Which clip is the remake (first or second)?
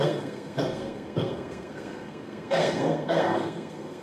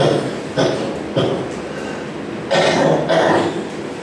first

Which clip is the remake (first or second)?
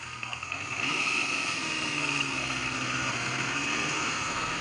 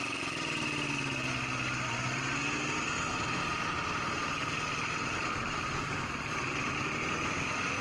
first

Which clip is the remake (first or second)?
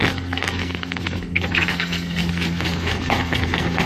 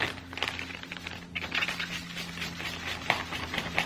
first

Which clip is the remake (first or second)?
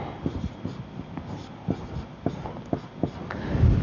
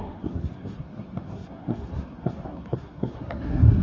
second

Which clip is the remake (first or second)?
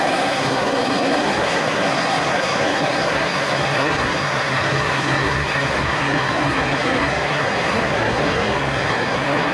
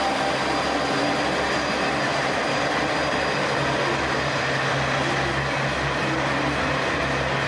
first